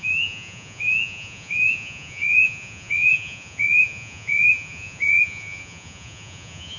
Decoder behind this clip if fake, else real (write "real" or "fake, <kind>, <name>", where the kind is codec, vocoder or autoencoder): fake, vocoder, Vocos